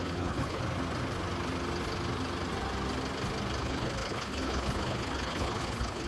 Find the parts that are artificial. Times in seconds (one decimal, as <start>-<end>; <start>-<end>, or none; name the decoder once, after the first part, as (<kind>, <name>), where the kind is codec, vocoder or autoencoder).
0.0-0.6 (codec, HILCodec); 3.6-6.1